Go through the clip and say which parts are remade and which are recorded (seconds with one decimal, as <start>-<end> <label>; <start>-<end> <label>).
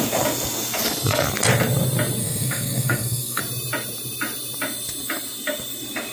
0.0-2.2 recorded; 2.2-3.4 remade; 3.4-6.1 recorded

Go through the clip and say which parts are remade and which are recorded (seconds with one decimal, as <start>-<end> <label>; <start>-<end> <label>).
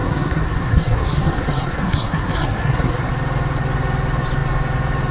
0.0-3.1 remade; 3.1-5.1 recorded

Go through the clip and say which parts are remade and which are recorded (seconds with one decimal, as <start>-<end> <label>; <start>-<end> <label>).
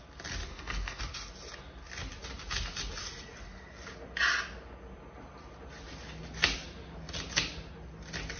0.0-0.5 recorded; 0.5-1.0 remade; 1.0-8.4 recorded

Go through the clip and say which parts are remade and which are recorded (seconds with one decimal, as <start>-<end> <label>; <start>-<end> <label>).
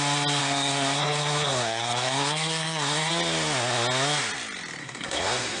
0.0-0.4 recorded; 0.4-3.1 remade; 3.1-4.8 recorded; 4.8-5.6 remade